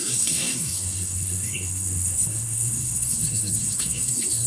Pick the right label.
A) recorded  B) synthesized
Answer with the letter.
B